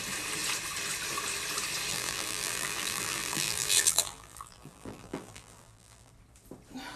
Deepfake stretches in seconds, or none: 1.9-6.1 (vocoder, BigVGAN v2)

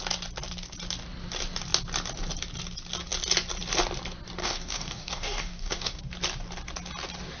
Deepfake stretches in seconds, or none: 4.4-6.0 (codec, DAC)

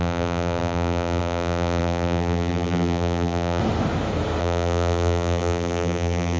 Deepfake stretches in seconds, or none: 0.0-3.6 (vocoder, BigVGAN v2); 4.4-6.4

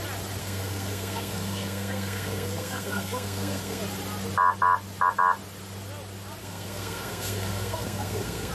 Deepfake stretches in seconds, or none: 0.4-3.8 (codec, SNAC); 6.4-8.5

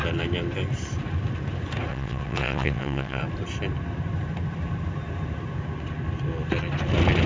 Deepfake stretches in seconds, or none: 1.9-3.2 (vocoder, WaveNeXt)